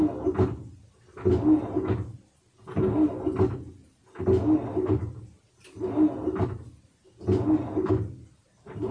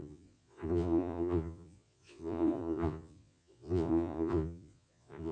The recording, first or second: first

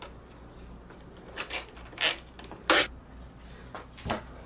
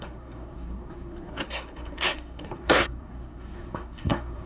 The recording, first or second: first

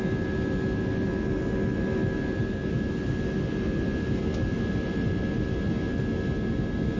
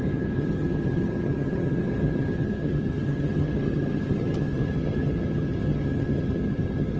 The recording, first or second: first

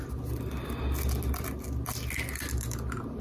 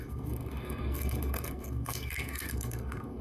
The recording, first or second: first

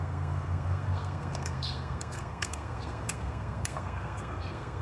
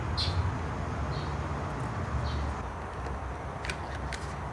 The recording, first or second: second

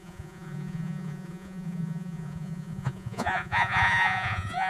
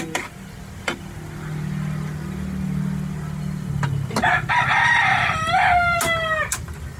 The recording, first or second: second